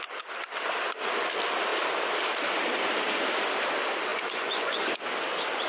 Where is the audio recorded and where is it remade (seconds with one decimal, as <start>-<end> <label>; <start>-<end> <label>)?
0.0-4.1 recorded; 4.1-5.0 remade; 5.0-5.7 recorded